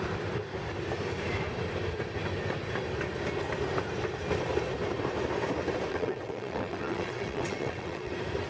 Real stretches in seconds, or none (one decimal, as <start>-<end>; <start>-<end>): 0.0-5.9; 8.1-8.5